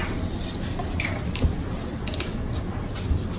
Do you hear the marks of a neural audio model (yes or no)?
no